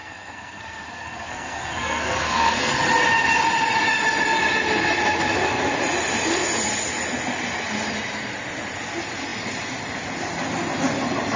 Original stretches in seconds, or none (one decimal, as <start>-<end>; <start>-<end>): 2.7-11.4